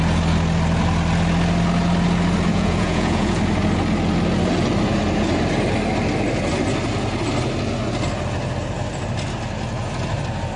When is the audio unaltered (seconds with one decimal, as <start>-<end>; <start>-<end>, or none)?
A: 0.0-2.5; 3.4-10.6

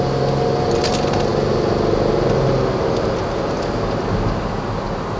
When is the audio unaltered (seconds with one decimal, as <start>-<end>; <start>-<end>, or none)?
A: 0.0-5.2